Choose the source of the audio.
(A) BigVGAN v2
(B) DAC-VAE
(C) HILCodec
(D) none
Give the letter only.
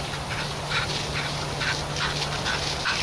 D